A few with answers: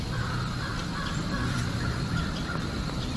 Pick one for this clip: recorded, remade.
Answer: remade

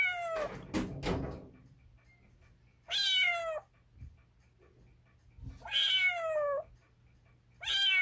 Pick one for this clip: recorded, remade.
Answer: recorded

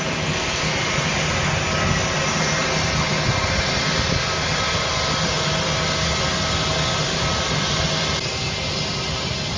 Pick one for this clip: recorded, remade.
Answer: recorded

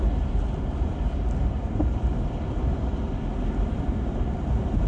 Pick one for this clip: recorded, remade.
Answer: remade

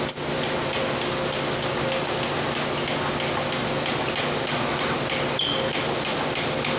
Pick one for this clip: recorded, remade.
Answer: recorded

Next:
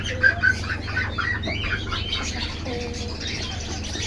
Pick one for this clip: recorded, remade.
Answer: recorded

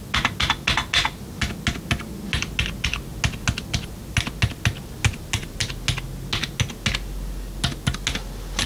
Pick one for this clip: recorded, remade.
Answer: recorded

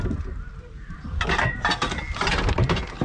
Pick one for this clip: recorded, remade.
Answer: recorded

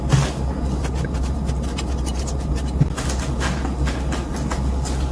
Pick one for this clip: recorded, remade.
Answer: recorded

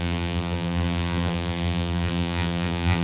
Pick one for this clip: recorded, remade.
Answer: remade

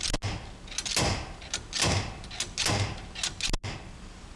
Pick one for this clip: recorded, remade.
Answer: recorded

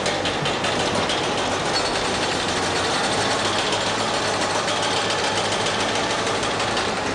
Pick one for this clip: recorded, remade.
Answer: recorded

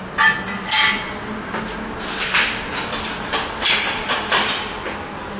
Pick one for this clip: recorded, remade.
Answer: recorded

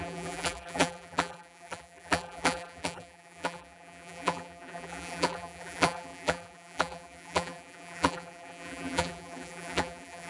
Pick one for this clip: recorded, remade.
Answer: remade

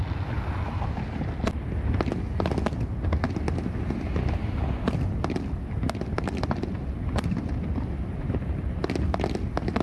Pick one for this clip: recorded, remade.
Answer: recorded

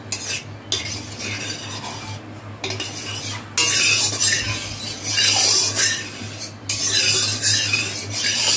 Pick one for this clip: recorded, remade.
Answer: recorded